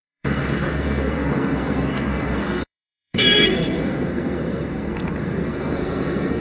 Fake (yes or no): yes